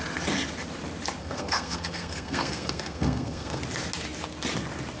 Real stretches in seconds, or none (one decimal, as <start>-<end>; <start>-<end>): 0.0-1.2; 3.6-5.0